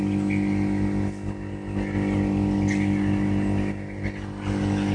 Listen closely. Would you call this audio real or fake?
real